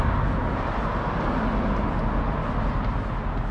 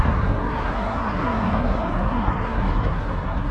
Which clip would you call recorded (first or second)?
first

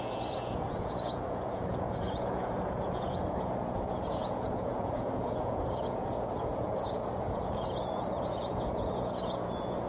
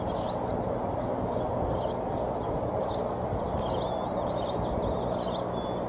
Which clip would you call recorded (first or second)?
second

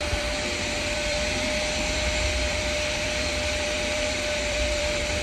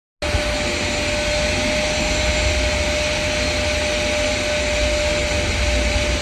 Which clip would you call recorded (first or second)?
second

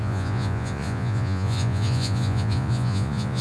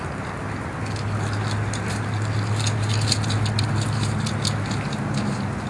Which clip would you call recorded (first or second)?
second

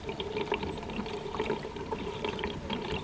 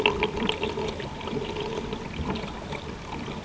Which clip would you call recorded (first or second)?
second